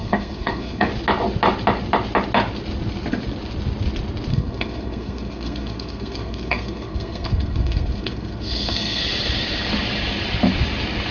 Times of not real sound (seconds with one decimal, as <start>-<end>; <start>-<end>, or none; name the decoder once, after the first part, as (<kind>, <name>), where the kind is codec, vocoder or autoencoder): 0.0-0.9 (codec, SNAC); 4.3-9.0